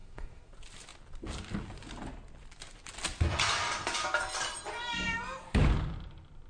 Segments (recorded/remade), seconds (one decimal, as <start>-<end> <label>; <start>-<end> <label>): 0.0-0.5 remade; 0.5-6.5 recorded